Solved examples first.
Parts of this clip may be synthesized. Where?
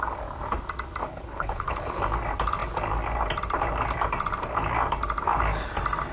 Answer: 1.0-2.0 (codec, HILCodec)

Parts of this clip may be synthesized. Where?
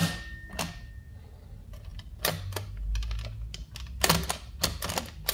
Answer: none